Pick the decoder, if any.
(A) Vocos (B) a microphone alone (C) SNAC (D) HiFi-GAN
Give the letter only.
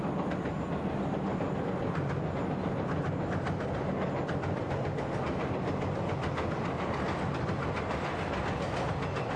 B